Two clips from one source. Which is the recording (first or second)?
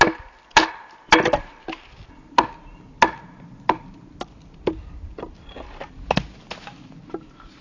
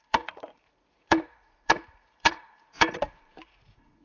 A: first